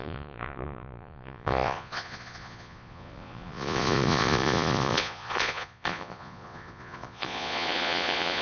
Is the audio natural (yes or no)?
no